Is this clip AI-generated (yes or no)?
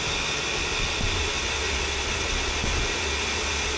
yes